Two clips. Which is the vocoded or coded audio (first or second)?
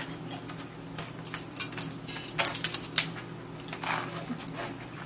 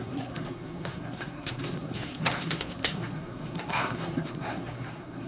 second